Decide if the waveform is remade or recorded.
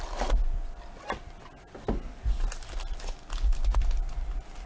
recorded